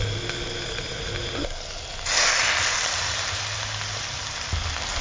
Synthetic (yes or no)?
no